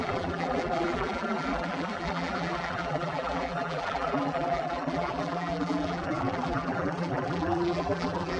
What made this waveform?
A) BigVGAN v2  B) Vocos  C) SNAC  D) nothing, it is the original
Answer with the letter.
A